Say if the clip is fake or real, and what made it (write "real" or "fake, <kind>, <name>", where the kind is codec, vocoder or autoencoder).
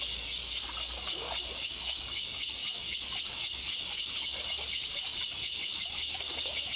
fake, codec, DAC